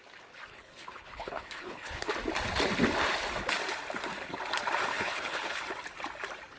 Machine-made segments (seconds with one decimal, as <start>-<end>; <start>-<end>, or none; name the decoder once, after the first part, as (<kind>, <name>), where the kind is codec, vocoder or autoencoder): 0.5-2.1 (codec, HILCodec); 4.9-5.6